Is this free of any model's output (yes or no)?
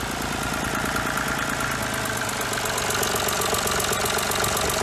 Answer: yes